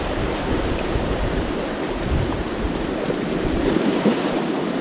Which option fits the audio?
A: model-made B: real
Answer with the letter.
A